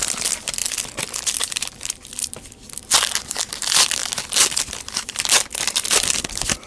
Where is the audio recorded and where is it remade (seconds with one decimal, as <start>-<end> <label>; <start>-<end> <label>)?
0.0-0.6 recorded; 0.6-2.8 remade; 2.8-6.7 recorded